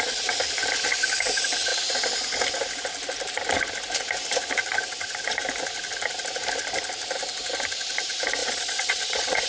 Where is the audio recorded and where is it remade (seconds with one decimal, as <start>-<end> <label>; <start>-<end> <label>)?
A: 0.0-8.4 recorded; 8.4-9.5 remade